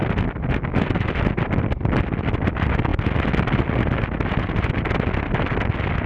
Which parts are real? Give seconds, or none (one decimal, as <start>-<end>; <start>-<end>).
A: 0.0-6.1